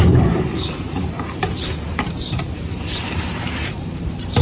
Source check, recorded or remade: remade